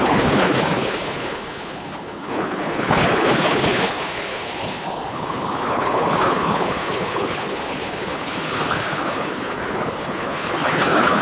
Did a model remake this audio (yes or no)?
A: yes